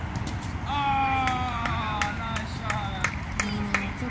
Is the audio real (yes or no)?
yes